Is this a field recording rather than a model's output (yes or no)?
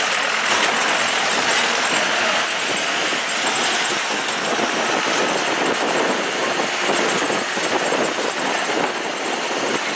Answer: yes